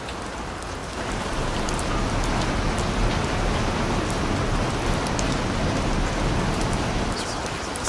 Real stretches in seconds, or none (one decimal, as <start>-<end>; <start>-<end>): 0.0-0.8; 1.9-7.9